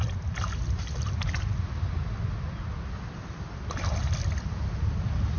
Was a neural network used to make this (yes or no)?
no